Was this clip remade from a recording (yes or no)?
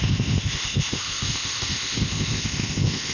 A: yes